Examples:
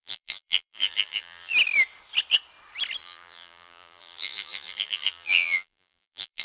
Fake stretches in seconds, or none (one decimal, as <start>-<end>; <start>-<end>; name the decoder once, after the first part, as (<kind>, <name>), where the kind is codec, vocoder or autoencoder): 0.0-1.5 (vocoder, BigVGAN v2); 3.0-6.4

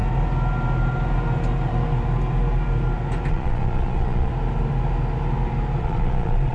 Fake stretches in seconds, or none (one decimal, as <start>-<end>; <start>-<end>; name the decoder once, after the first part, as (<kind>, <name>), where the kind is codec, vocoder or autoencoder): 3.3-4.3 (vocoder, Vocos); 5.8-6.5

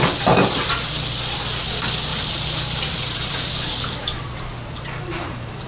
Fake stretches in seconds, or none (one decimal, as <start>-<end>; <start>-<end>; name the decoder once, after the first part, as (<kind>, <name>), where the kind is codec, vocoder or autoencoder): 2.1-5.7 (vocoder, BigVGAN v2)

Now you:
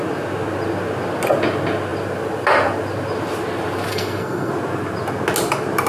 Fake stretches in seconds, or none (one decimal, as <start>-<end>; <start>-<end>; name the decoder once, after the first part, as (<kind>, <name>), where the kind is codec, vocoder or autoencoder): 3.9-4.5 (codec, SNAC)

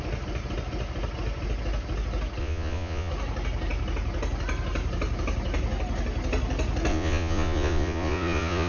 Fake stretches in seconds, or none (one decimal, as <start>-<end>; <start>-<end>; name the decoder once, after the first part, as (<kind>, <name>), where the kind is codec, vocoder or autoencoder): 2.4-3.1 (vocoder, Vocos); 6.9-8.7

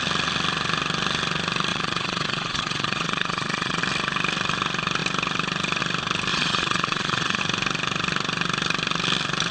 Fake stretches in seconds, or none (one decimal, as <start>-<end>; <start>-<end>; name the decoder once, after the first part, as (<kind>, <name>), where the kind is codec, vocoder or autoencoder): 1.7-3.8 (vocoder, Vocos); 6.3-7.4

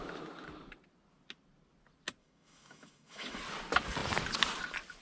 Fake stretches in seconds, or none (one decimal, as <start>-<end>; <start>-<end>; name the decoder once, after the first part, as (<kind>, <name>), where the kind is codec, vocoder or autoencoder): 2.2-3.4 (autoencoder, DAC-VAE)